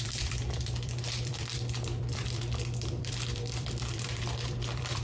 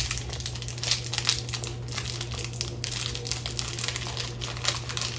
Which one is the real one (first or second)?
second